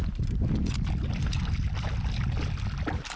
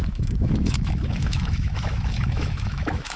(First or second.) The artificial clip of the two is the second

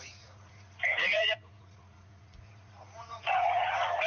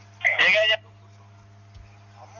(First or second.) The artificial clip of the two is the first